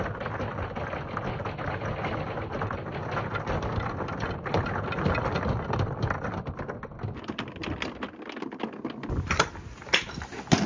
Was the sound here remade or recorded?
recorded